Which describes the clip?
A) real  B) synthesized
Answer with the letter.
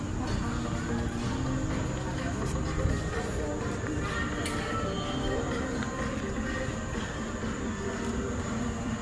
A